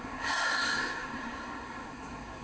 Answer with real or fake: fake